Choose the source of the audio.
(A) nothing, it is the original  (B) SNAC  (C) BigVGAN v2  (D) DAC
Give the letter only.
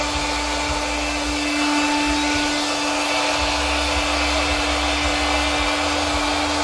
A